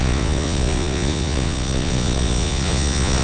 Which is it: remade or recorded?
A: remade